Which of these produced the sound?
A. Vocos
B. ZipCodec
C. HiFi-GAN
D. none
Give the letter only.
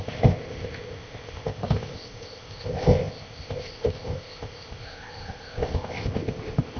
B